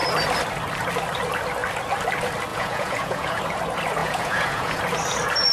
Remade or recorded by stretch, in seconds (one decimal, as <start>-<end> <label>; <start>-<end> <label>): 0.0-2.5 recorded; 2.5-3.4 remade; 3.4-4.0 recorded; 4.0-4.8 remade; 4.8-5.5 recorded